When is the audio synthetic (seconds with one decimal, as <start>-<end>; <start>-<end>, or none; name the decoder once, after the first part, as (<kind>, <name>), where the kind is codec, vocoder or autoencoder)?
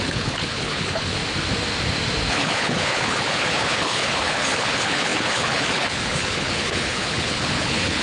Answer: 0.0-1.2 (codec, HILCodec); 2.3-8.0